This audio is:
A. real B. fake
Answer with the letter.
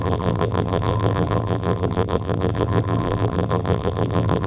B